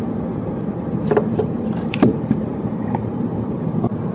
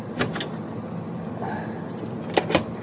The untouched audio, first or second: second